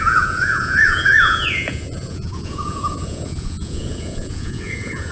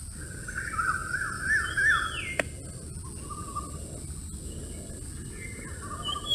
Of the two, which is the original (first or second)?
second